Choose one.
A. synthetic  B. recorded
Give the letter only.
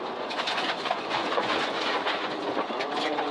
A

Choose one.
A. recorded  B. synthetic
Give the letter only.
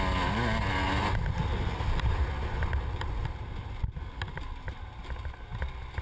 A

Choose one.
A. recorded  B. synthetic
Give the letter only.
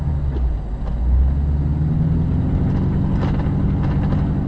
A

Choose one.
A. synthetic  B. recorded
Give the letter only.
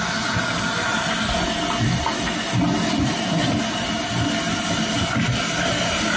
B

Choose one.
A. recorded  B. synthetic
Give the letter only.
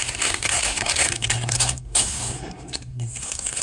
B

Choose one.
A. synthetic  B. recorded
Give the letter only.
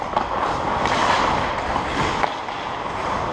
B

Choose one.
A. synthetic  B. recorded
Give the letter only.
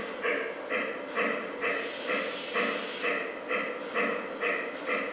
B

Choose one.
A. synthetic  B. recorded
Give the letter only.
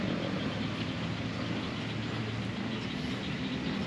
B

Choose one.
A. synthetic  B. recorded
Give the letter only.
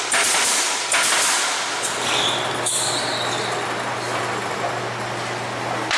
B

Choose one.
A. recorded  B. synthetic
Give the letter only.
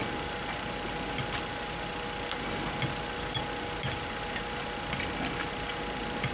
A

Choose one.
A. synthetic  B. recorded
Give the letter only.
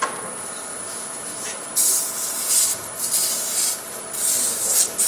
B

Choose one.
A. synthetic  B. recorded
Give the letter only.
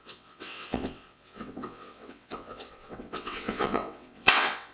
A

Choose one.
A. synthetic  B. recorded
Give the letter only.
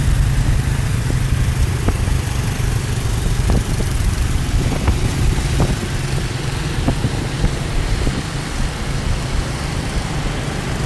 A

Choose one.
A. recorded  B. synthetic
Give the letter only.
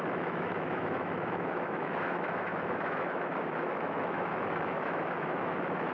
B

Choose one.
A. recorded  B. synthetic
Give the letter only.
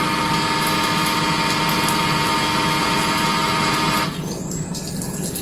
A